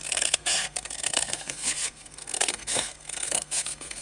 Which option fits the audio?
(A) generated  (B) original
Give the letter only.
A